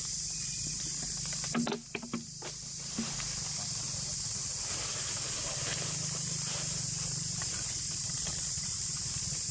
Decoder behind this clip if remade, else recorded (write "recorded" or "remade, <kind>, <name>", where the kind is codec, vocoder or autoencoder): remade, vocoder, BigVGAN v2